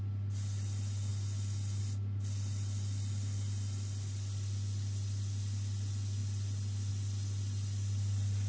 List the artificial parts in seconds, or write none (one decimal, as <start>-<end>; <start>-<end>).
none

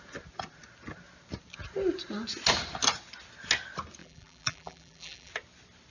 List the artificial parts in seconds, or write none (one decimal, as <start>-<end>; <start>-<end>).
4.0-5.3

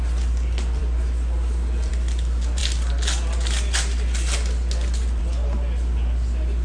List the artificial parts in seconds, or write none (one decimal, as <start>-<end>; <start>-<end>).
none

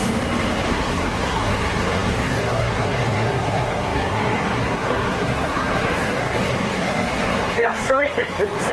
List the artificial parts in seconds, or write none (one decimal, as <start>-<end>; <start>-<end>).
0.7-8.7

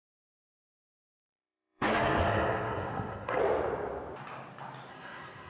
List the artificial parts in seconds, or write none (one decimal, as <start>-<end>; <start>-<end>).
0.0-3.4; 4.9-5.5